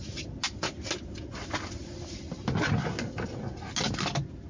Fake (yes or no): no